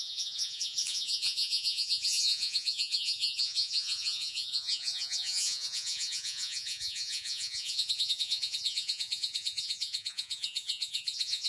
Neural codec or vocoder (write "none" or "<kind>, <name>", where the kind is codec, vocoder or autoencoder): vocoder, Vocos